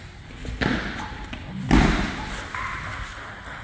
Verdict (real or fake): real